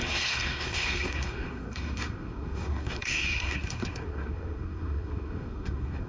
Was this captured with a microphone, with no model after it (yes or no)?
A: no